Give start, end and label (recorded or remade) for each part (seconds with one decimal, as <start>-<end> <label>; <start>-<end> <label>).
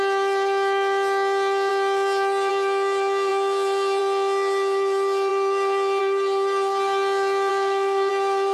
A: 0.0-7.5 recorded; 7.5-8.1 remade; 8.1-8.5 recorded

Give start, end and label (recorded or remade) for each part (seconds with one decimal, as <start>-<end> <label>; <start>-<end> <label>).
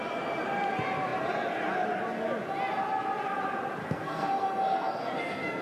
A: 0.0-3.8 recorded; 3.8-5.6 remade